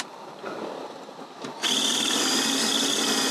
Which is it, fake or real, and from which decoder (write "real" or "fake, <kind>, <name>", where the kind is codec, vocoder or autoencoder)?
real